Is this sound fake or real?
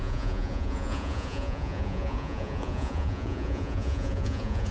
fake